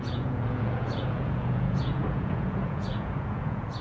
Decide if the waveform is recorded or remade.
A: remade